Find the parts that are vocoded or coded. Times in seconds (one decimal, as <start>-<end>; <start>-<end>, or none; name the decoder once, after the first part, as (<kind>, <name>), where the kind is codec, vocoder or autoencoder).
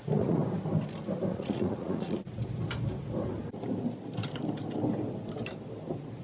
0.0-0.4 (vocoder, Vocos); 1.3-2.4